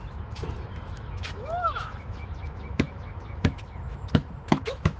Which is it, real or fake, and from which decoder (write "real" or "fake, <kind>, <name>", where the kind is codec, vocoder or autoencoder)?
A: fake, autoencoder, DAC-VAE